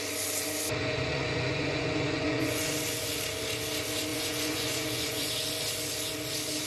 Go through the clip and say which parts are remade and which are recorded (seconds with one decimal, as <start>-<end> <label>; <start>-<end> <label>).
0.0-0.8 recorded; 0.8-2.7 remade; 2.7-4.1 recorded; 4.1-5.3 remade; 5.3-6.7 recorded